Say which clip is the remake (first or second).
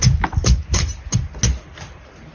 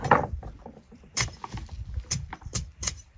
second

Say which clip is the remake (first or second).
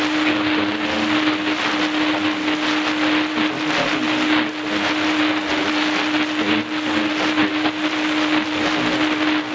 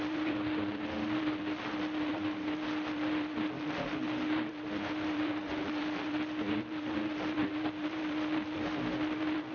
second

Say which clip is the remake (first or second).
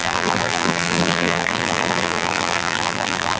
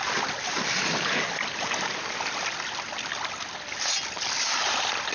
first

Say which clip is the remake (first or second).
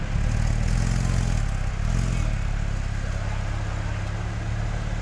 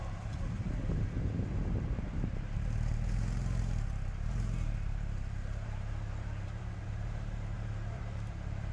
second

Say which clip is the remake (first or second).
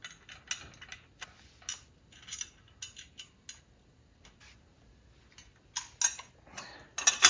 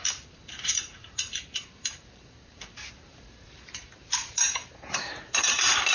second